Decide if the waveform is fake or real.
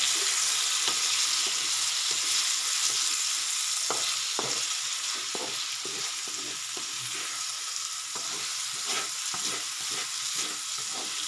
real